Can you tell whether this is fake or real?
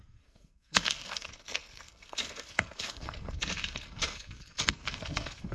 fake